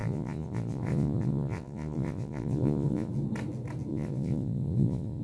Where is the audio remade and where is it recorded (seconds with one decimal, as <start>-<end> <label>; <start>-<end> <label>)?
0.0-3.1 remade; 3.1-3.9 recorded; 3.9-5.2 remade